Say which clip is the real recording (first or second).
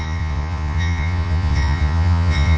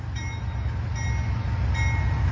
second